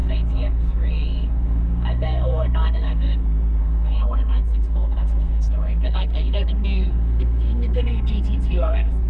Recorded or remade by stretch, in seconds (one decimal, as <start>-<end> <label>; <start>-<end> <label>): 0.0-9.1 remade